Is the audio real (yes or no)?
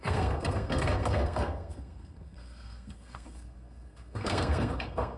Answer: no